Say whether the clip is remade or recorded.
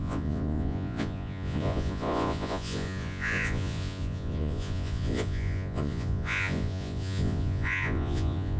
remade